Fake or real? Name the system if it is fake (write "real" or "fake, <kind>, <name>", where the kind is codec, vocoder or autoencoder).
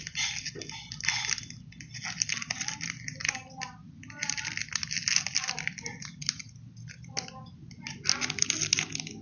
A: real